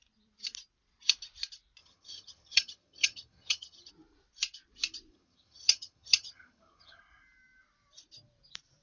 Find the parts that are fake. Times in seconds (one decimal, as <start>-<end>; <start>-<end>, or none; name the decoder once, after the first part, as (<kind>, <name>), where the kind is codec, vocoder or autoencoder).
1.8-3.9 (vocoder, HiFi-GAN); 5.1-7.0